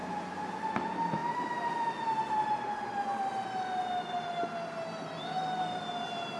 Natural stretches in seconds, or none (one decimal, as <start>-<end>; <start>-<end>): 0.0-6.4